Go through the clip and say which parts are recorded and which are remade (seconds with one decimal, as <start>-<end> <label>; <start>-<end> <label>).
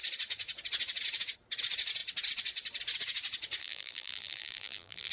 0.0-3.6 recorded; 3.6-5.1 remade